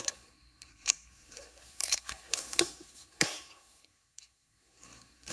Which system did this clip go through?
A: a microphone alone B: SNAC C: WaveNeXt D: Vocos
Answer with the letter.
B